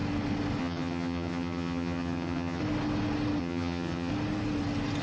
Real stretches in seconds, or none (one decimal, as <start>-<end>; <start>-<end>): 0.0-0.6; 2.6-3.4; 4.1-5.0